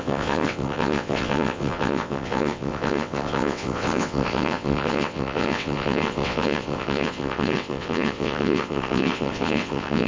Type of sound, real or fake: fake